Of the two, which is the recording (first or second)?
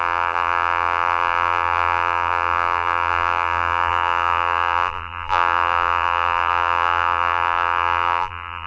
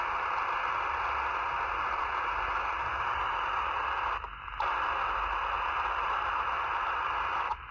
second